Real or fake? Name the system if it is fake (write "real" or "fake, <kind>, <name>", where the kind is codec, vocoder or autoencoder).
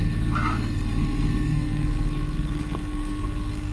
fake, codec, SNAC